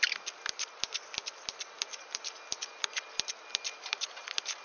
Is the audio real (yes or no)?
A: yes